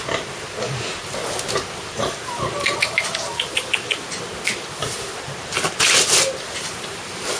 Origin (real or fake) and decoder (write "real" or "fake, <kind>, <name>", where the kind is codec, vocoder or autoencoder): real